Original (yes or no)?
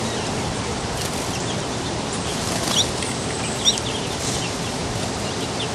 no